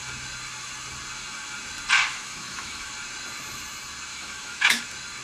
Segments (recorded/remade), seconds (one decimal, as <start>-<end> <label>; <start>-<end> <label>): 0.0-2.1 recorded; 2.1-2.9 remade; 2.9-4.1 recorded; 4.1-4.8 remade; 4.8-5.2 recorded